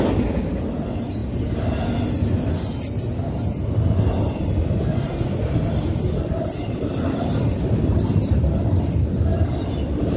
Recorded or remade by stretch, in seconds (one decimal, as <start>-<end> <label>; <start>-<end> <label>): 0.0-4.6 recorded; 4.6-8.5 remade; 8.5-9.3 recorded; 9.3-10.2 remade